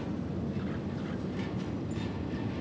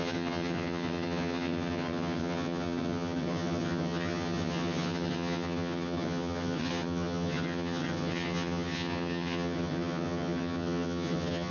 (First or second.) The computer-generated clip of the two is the second